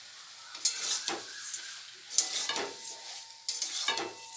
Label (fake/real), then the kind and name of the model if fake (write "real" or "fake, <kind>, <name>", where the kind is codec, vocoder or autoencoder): real